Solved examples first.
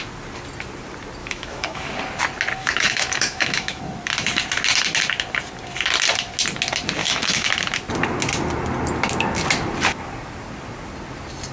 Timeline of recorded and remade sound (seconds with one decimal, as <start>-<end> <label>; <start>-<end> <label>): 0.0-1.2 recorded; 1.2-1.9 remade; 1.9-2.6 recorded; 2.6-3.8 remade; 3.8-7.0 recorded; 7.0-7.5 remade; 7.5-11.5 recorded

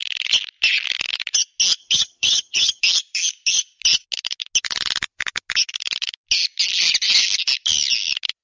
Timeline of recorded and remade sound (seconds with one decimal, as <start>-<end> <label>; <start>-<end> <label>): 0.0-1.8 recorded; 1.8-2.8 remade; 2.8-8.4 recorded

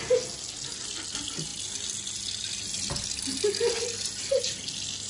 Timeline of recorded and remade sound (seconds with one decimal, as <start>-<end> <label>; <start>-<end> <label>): 0.0-5.1 recorded

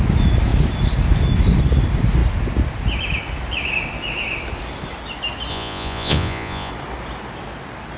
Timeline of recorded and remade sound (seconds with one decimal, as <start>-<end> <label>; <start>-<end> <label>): 0.0-5.5 recorded; 5.5-6.7 remade; 6.7-8.0 recorded

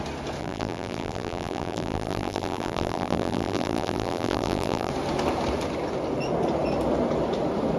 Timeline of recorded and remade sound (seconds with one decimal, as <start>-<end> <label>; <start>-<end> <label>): 0.0-0.4 recorded; 0.4-4.9 remade; 4.9-7.8 recorded